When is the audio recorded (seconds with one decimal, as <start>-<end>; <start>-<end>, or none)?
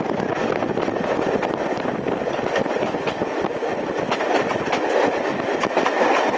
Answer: 0.0-6.4